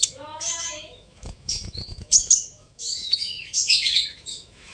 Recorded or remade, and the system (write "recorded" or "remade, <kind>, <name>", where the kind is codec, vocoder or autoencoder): remade, autoencoder, DAC-VAE